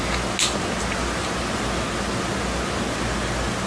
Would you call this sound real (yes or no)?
yes